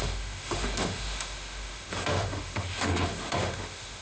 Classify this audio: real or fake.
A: fake